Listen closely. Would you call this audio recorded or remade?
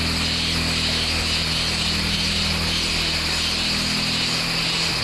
recorded